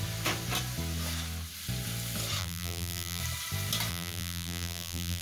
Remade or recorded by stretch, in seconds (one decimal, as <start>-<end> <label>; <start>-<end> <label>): 0.0-2.4 recorded; 2.4-3.2 remade; 3.2-3.9 recorded; 3.9-5.2 remade